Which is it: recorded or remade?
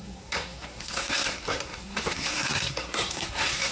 remade